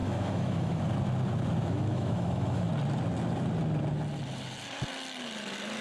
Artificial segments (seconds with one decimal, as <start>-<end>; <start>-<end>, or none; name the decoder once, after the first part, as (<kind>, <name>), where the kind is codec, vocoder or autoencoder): 0.0-0.8 (autoencoder, DAC-VAE); 1.6-2.7